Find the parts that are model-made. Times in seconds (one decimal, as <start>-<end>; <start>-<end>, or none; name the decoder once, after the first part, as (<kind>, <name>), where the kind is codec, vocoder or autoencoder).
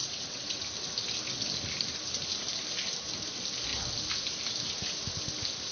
0.0-0.6 (vocoder, WaveNeXt)